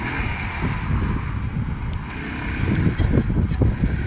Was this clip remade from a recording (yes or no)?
no